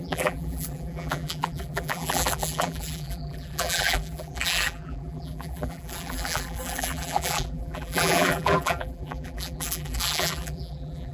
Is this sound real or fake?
fake